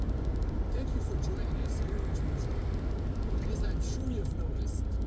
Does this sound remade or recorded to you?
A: recorded